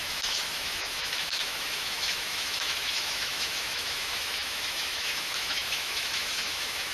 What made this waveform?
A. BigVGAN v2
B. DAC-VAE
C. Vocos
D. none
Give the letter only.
B